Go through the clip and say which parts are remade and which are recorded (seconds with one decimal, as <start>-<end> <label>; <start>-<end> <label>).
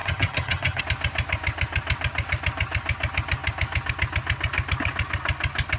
0.0-0.8 remade; 0.8-5.8 recorded